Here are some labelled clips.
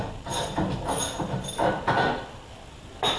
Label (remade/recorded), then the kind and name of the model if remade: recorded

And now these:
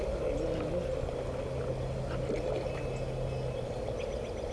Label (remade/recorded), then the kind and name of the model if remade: recorded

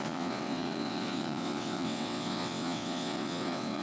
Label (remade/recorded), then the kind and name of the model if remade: remade, vocoder, WaveNeXt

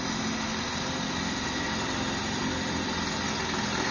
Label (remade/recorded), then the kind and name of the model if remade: recorded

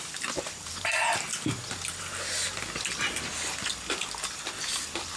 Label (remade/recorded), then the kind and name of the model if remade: recorded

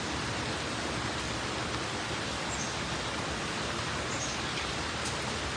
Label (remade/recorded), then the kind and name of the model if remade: recorded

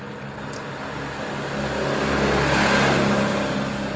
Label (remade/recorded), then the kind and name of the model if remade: recorded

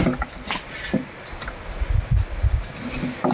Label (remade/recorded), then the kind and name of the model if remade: recorded